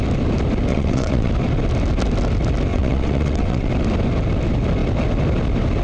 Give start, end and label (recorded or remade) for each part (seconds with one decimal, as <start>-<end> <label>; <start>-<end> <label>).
0.0-0.7 recorded; 0.7-1.3 remade; 1.3-2.7 recorded; 2.7-3.7 remade; 3.7-5.8 recorded